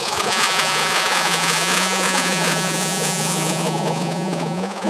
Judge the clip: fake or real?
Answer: fake